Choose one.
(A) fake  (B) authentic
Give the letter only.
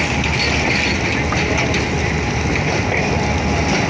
B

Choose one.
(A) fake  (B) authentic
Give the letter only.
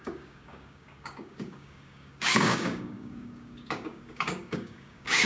A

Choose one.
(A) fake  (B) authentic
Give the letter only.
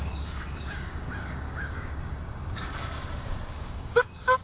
A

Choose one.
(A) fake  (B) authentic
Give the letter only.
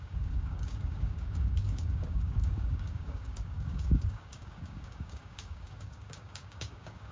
A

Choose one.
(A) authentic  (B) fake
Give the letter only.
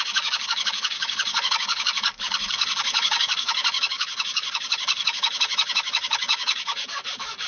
B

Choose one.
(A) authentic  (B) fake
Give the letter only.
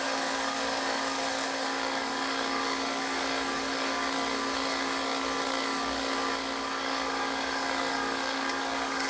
B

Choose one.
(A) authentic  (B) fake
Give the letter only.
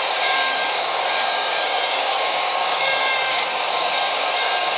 B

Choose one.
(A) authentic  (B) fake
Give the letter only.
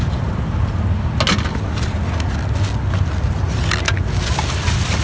A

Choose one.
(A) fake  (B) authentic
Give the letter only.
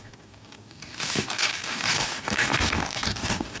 A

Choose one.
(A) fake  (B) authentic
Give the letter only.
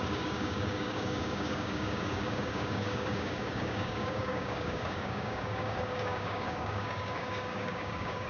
A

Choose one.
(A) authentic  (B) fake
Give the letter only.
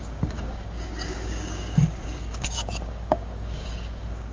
B